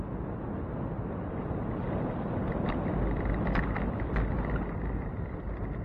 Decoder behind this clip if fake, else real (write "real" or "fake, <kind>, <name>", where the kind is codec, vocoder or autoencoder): real